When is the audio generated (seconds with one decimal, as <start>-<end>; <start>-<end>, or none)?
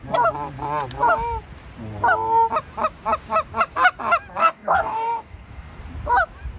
4.4-5.8